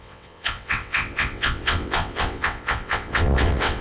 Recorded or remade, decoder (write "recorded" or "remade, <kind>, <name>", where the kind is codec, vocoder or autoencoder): remade, vocoder, WaveNeXt